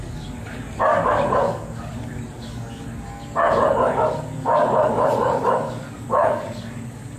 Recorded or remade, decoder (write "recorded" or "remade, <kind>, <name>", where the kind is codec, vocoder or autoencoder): remade, codec, DAC